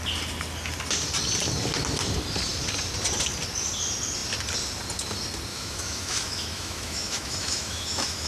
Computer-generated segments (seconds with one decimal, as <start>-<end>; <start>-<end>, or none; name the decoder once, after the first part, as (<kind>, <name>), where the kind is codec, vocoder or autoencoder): 5.5-8.3 (autoencoder, DAC-VAE)